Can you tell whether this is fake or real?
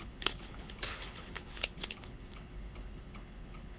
fake